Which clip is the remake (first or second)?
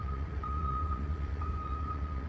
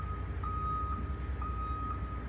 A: first